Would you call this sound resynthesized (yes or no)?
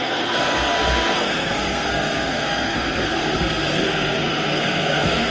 yes